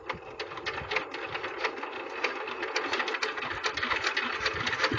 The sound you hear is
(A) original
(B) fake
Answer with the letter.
A